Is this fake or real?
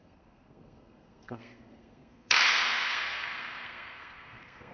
fake